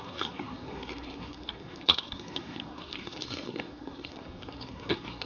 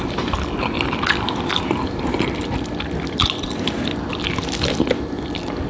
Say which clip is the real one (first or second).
second